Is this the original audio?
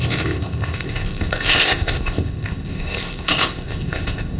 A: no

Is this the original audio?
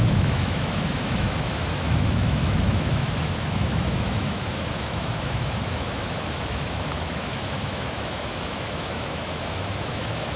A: no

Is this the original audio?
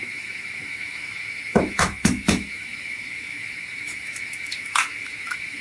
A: no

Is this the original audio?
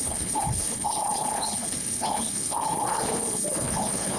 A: no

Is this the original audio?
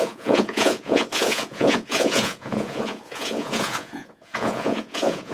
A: no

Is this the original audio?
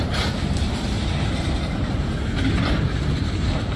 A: no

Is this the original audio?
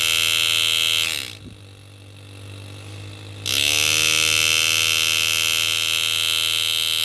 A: yes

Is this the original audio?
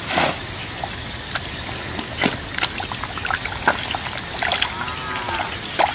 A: yes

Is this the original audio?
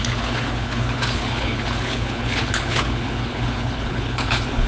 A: no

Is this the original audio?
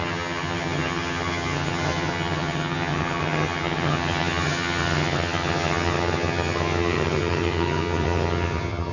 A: no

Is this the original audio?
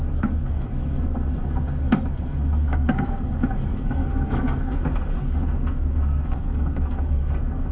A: no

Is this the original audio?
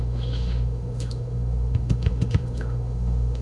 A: no